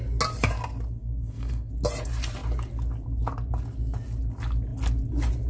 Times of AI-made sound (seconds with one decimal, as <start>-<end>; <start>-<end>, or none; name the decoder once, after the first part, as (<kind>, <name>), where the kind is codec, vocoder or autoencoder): 1.0-1.7 (codec, SNAC)